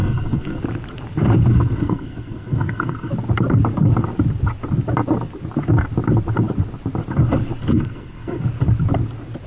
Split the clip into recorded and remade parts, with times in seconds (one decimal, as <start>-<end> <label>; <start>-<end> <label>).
0.0-0.6 remade; 0.6-1.5 recorded; 1.5-3.1 remade; 3.1-7.7 recorded; 7.7-8.4 remade; 8.4-9.5 recorded